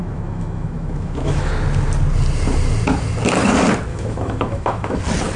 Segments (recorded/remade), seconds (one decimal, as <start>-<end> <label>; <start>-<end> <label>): 0.0-1.5 remade; 1.5-3.9 recorded; 3.9-5.0 remade; 5.0-5.4 recorded